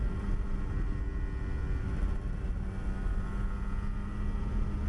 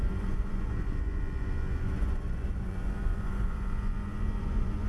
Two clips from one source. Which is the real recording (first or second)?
first